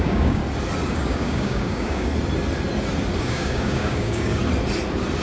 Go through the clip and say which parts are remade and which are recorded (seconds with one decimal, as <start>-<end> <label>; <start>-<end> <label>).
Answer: 0.0-0.4 remade; 0.4-0.9 recorded; 0.9-2.1 remade; 2.1-3.2 recorded; 3.2-4.4 remade; 4.4-5.2 recorded